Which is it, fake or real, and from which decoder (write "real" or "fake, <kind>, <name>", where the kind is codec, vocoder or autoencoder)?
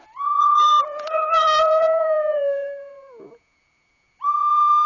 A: fake, vocoder, Vocos